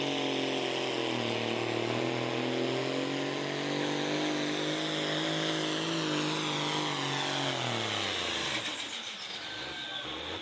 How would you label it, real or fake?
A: real